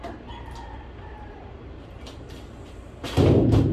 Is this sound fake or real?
fake